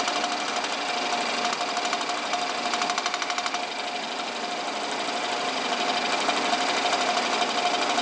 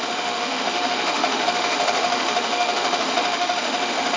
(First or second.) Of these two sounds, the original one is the first